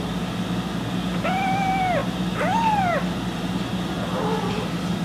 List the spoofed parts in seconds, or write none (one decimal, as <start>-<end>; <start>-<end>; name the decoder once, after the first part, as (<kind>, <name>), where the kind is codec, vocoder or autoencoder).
none